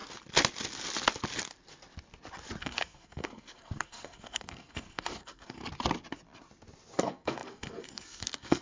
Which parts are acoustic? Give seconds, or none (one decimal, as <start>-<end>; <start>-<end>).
0.0-2.6; 5.6-7.0